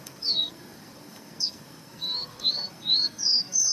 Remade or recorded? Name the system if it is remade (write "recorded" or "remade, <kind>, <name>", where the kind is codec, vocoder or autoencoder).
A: remade, codec, SNAC